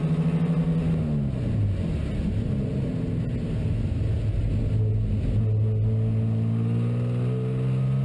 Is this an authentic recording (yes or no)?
yes